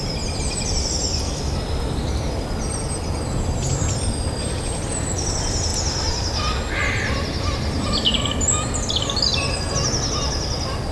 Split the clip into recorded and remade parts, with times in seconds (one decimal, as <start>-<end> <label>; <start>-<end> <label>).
0.0-10.9 recorded